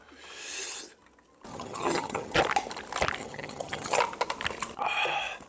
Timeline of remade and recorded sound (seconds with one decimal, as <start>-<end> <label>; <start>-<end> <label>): 0.0-1.5 recorded; 1.5-2.4 remade; 2.4-3.2 recorded; 3.2-4.0 remade; 4.0-5.5 recorded